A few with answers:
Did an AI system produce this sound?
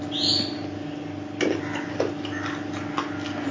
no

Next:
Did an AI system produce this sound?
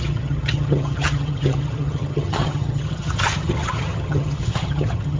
yes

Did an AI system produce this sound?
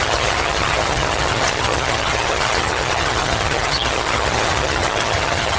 yes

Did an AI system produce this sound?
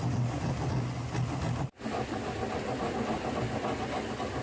no